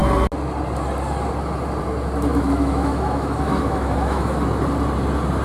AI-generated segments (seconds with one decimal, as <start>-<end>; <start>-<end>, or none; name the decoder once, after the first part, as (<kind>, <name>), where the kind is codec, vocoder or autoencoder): 2.3-4.4 (autoencoder, DAC-VAE)